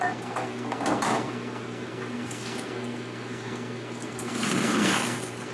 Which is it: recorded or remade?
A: remade